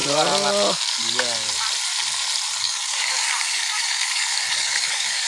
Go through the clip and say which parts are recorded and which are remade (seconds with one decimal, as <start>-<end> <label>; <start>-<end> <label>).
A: 0.0-0.7 recorded; 0.7-1.5 remade; 1.5-2.6 recorded; 2.6-5.3 remade